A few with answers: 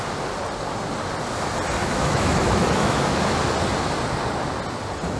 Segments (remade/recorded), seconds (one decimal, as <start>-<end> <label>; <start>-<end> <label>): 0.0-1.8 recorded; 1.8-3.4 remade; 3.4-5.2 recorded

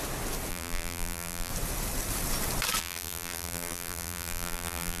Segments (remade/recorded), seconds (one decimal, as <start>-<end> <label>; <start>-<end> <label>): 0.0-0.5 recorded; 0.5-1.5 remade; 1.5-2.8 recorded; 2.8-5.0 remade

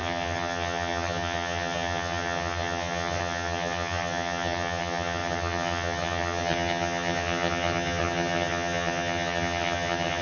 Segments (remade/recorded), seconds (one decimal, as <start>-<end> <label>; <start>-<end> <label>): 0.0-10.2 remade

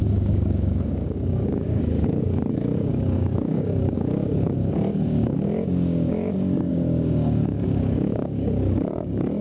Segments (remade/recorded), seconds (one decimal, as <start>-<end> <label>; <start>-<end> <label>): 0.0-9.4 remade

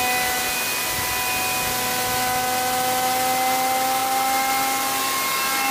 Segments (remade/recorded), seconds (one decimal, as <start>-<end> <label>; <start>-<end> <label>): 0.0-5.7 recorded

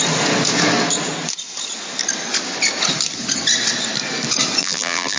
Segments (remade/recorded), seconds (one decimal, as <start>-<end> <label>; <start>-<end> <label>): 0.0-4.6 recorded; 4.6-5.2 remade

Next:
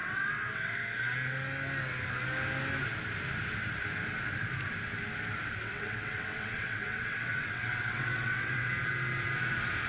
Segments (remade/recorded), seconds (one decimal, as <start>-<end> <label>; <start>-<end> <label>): 0.0-0.8 remade; 0.8-5.6 recorded; 5.6-8.7 remade; 8.7-9.9 recorded

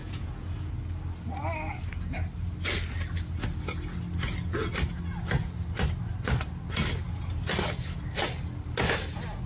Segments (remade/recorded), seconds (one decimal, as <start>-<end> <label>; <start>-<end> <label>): 0.0-0.7 remade; 0.7-9.5 recorded